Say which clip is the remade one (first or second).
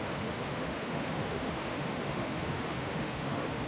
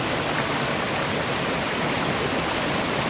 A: first